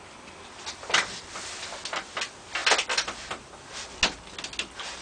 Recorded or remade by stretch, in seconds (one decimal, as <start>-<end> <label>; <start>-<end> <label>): 0.0-5.0 recorded